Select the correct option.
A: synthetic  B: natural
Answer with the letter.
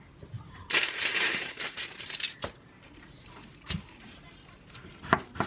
A